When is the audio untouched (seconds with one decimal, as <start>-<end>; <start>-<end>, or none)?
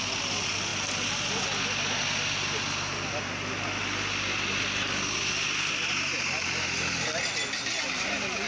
0.0-8.5